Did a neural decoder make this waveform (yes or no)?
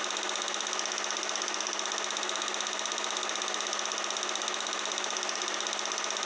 no